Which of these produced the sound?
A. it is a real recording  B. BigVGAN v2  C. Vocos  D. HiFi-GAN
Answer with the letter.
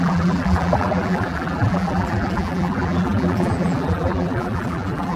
B